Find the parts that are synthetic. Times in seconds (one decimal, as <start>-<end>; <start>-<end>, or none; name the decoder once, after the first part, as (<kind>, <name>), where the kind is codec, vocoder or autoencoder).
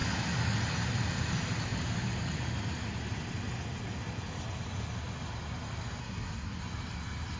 6.0-6.6 (codec, SNAC)